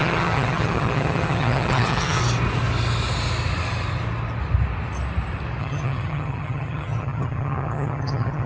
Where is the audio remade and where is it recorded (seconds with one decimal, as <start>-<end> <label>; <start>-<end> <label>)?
0.0-2.2 remade; 2.2-5.6 recorded; 5.6-8.5 remade